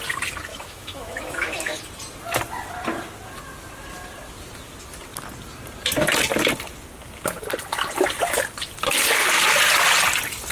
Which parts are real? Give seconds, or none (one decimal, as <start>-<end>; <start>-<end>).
0.0-0.5; 1.8-10.5